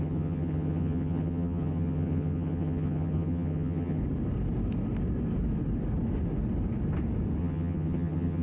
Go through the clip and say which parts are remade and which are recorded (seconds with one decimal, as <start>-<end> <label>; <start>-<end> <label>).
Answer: 0.0-4.0 remade; 4.0-7.4 recorded; 7.4-8.4 remade